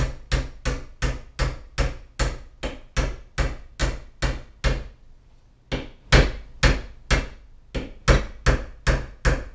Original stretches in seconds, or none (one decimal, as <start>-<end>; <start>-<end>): 0.0-9.5